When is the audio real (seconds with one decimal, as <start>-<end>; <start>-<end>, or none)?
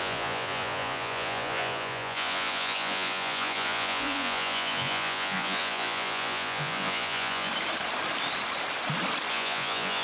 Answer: 7.5-9.3